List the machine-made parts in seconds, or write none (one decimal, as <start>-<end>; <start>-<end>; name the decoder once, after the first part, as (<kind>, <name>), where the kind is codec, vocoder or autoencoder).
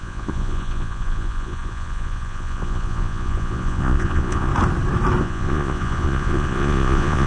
0.0-4.5 (vocoder, Vocos); 5.2-7.3